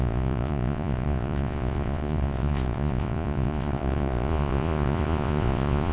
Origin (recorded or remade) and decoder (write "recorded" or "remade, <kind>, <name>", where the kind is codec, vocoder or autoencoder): remade, vocoder, Vocos